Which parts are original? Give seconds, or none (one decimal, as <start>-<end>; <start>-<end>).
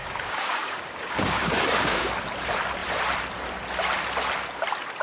2.1-5.0